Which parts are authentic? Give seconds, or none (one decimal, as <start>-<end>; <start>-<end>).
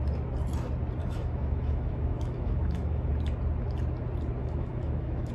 0.0-1.0; 3.1-4.4